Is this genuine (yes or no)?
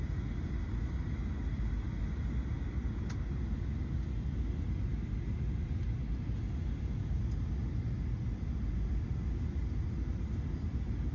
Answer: yes